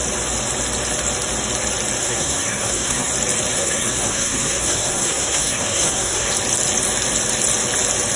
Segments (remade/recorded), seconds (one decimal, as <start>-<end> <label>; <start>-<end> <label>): 0.0-2.0 recorded; 2.0-3.1 remade; 3.1-3.5 recorded; 3.5-6.3 remade; 6.3-8.2 recorded